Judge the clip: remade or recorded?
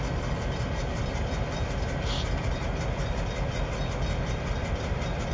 recorded